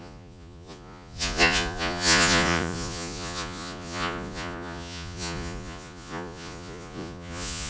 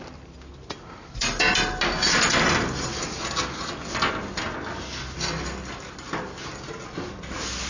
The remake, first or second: first